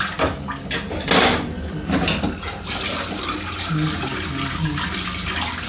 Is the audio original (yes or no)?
yes